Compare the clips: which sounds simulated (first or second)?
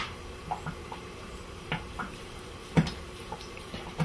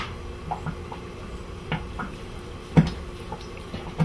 first